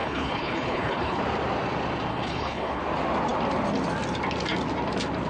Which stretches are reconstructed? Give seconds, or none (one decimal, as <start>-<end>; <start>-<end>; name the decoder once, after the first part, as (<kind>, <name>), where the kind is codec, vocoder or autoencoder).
0.0-1.2 (codec, HILCodec); 2.1-2.8